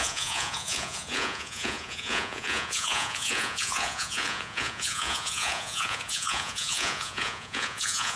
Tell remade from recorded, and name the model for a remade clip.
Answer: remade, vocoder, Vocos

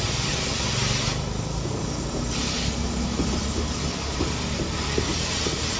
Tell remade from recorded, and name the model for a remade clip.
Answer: recorded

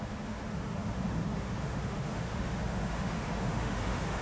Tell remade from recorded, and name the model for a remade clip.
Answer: remade, autoencoder, DAC-VAE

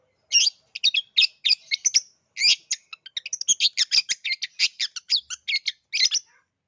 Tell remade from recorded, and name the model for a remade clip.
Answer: recorded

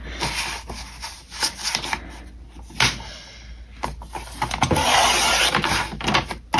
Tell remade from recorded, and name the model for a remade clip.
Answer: recorded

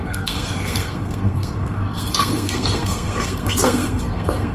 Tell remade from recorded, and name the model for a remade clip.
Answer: remade, codec, SNAC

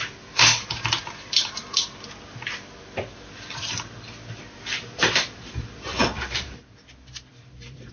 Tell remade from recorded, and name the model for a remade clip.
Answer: remade, vocoder, BigVGAN v2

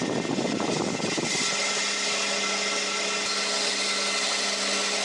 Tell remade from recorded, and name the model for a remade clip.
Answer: recorded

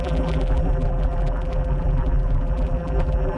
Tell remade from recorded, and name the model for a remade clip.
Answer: remade, vocoder, BigVGAN v2